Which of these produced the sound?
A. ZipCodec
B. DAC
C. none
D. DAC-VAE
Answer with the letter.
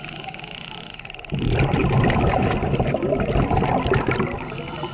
C